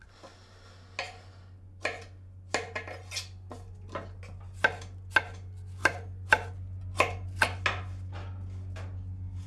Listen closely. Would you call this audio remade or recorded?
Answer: recorded